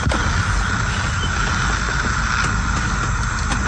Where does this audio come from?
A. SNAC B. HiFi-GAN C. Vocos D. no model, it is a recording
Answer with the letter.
D